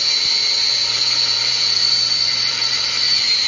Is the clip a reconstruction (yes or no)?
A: yes